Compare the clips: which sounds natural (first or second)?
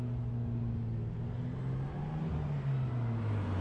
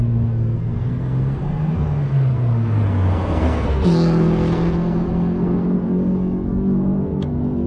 first